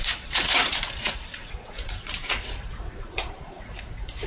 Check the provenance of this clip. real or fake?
fake